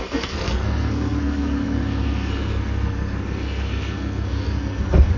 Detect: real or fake fake